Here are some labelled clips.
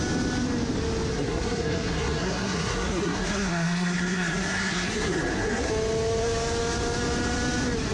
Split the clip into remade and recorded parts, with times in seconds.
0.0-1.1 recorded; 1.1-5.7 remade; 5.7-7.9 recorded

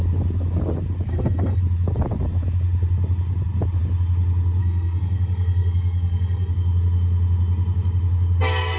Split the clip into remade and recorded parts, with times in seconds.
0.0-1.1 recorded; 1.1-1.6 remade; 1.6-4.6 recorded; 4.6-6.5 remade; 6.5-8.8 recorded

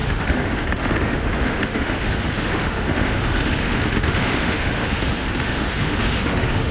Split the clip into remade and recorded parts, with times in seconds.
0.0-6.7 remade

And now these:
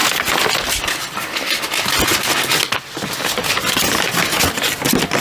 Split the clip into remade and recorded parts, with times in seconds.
0.0-5.2 recorded

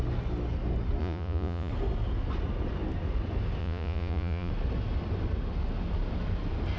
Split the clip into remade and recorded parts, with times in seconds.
0.0-1.0 recorded; 1.0-1.7 remade; 1.7-3.6 recorded; 3.6-4.5 remade; 4.5-6.8 recorded

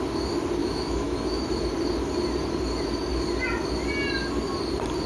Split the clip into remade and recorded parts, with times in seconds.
0.0-0.6 recorded; 0.6-1.4 remade; 1.4-5.1 recorded

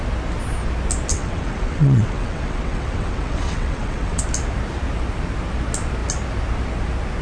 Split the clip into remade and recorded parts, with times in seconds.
0.0-1.1 recorded; 1.1-4.2 remade; 4.2-7.2 recorded